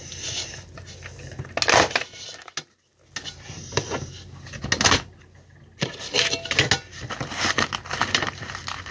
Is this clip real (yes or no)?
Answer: yes